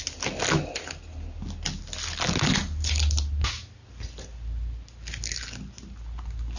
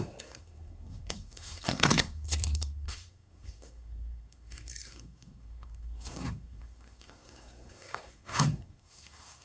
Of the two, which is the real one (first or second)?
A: first